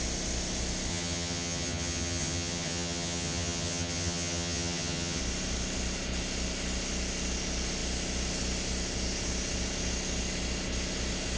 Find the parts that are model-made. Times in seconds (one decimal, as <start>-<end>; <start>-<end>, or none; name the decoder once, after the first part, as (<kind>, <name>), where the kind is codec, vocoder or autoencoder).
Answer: 0.9-5.2 (vocoder, HiFi-GAN)